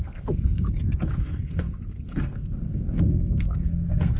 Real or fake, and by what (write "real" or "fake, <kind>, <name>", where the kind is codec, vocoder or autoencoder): fake, codec, SNAC